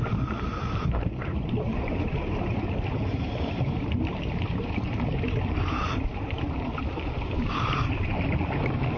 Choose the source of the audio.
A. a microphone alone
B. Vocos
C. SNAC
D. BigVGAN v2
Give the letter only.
D